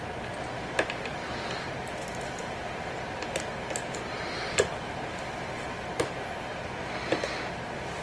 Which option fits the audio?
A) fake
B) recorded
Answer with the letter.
B